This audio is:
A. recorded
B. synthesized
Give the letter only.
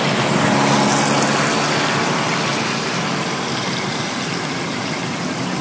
A